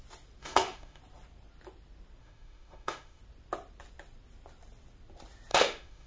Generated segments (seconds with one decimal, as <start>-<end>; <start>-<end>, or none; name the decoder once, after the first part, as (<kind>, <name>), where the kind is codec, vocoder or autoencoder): 0.4-1.0 (autoencoder, DAC-VAE); 2.2-3.2; 5.5-6.1